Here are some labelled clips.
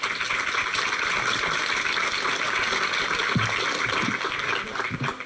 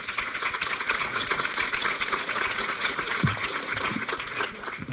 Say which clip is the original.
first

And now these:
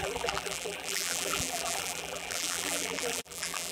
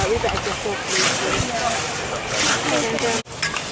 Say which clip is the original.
second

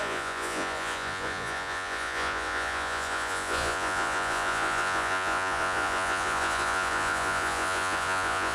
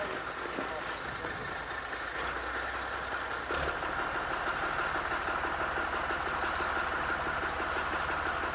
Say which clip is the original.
second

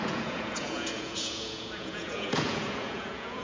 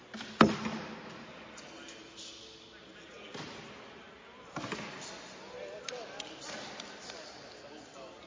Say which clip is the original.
second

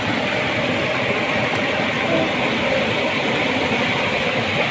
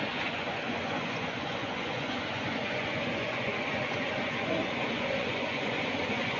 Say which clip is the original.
first